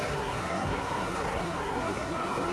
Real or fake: fake